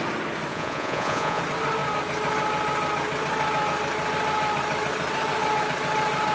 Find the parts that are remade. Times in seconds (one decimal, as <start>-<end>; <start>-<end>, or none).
0.5-1.4